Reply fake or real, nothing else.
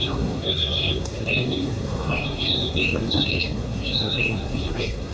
fake